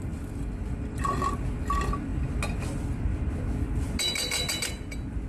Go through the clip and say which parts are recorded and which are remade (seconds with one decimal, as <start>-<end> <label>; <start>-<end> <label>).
0.0-5.3 recorded